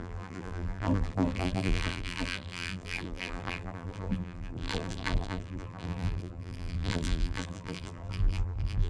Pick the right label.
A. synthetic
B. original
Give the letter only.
A